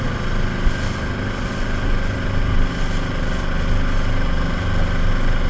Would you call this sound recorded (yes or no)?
yes